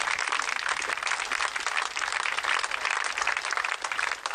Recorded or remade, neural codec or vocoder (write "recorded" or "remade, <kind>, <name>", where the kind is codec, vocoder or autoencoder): recorded